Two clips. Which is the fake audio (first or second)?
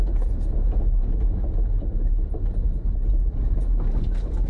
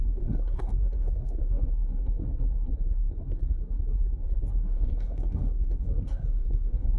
second